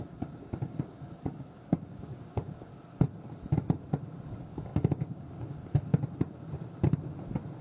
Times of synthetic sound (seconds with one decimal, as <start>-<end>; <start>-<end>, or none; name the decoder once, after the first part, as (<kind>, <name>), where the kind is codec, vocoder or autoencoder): 0.0-2.7 (codec, DAC); 4.3-5.9